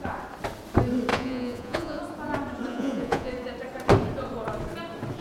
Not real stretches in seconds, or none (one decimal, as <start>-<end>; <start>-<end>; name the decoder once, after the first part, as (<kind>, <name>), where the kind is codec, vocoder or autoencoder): 1.1-2.0 (vocoder, Vocos); 2.7-3.3